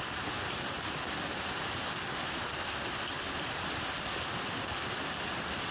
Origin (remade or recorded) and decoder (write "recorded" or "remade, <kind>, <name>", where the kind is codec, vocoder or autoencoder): recorded